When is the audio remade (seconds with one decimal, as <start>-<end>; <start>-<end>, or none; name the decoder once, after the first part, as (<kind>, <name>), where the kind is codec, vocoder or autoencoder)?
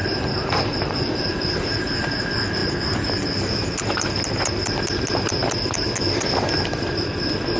0.0-2.2 (vocoder, BigVGAN v2); 2.6-3.7